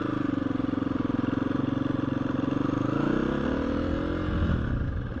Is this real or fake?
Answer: real